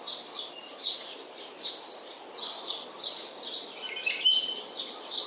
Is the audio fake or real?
real